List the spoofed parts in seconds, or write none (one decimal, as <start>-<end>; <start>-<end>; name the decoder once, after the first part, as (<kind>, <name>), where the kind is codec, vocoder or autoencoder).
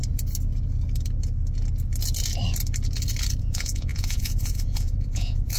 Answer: 3.4-5.6 (vocoder, Vocos)